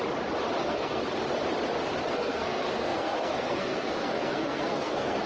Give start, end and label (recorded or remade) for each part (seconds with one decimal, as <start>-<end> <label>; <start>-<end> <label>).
0.0-0.6 recorded; 0.6-1.0 remade; 1.0-2.1 recorded; 2.1-5.3 remade

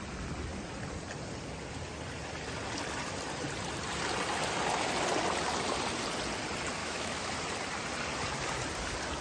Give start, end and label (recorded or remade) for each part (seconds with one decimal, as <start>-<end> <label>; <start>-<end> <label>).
0.0-6.8 recorded; 6.8-7.3 remade; 7.3-9.2 recorded

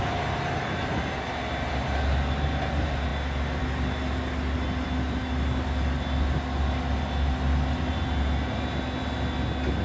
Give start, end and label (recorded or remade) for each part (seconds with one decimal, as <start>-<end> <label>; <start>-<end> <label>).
0.0-9.8 recorded

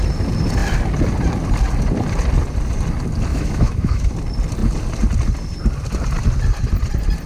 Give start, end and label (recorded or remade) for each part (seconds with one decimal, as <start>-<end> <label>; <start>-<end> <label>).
0.0-3.3 recorded; 3.3-4.1 remade; 4.1-7.3 recorded